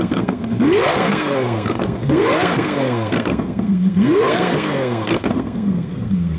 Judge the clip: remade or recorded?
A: remade